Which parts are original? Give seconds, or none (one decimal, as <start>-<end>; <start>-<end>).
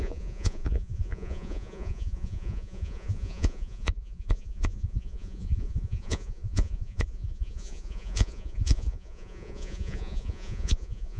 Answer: none